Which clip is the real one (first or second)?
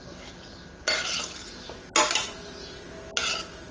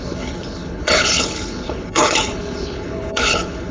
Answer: first